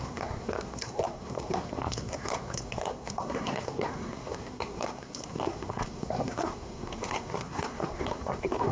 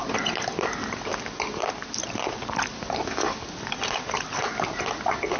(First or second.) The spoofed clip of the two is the first